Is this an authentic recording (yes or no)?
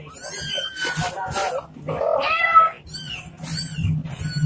yes